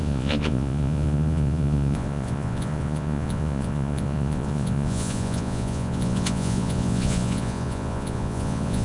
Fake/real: fake